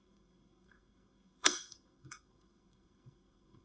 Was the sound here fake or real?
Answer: fake